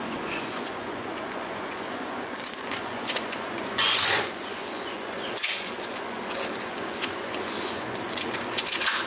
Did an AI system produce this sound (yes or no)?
yes